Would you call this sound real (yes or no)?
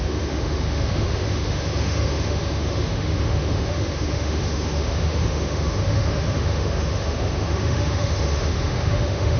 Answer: no